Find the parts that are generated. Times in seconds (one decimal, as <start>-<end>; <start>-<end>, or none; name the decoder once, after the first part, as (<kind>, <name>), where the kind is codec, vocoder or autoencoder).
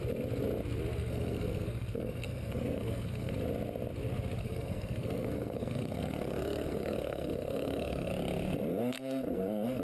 1.0-3.3 (codec, SNAC); 4.4-8.1; 8.7-9.8